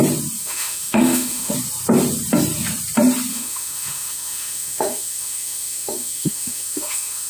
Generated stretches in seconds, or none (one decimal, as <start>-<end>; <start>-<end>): 0.4-1.5; 3.3-7.3